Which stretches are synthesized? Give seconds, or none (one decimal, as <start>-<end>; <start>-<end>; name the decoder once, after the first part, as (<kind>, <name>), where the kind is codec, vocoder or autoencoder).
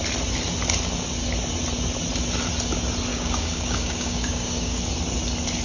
3.1-4.8 (codec, DAC)